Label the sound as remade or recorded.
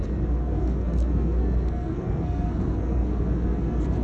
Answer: remade